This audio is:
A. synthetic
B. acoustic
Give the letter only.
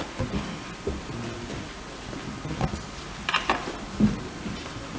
B